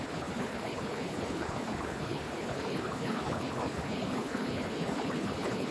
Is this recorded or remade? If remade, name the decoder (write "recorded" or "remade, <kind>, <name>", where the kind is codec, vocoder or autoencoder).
remade, codec, HILCodec